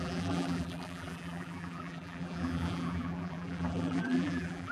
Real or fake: fake